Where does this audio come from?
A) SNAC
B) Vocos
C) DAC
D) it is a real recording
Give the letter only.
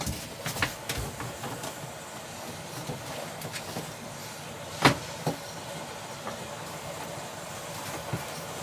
D